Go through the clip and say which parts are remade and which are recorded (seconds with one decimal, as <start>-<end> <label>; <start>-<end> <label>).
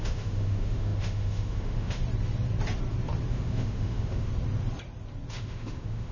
0.0-2.0 remade; 2.0-3.3 recorded; 3.3-4.3 remade; 4.3-5.3 recorded; 5.3-6.1 remade